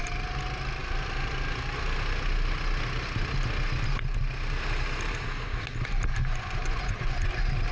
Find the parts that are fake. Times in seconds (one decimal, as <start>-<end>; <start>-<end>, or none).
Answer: 6.2-7.3

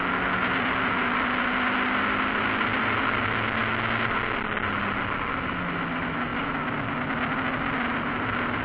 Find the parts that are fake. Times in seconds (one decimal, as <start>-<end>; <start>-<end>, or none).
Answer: none

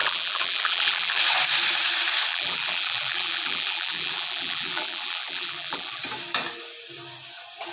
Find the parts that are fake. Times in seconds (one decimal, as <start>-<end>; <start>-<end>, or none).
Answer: 0.0-1.2; 2.3-6.0

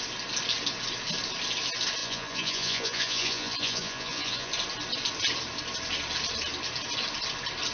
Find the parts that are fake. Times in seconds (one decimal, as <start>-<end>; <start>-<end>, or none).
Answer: 2.0-4.5

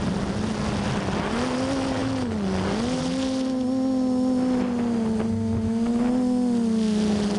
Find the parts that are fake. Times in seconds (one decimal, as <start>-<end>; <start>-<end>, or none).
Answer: none